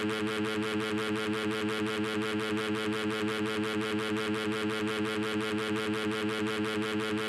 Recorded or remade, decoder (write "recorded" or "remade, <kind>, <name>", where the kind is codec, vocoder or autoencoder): recorded